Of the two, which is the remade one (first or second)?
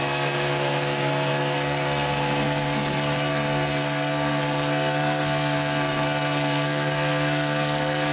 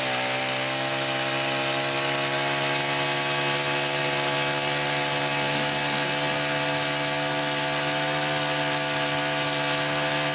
first